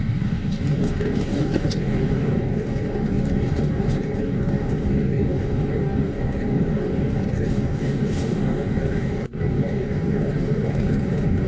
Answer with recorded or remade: remade